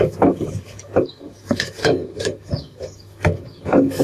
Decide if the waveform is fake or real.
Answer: fake